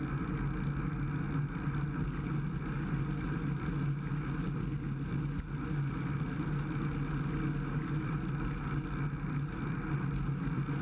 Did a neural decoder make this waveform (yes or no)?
no